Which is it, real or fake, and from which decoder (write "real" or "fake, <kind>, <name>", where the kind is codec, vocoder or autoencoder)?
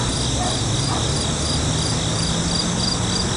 real